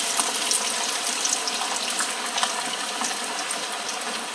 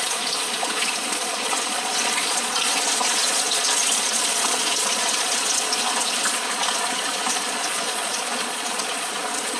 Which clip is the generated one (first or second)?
second